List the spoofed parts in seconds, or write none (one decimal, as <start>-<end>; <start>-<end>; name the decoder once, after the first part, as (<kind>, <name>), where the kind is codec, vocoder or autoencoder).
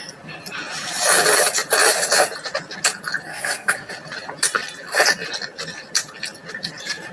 3.3-3.9 (codec, SNAC)